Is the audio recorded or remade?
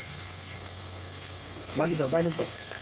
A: remade